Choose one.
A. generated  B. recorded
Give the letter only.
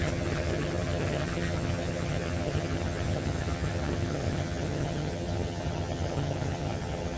A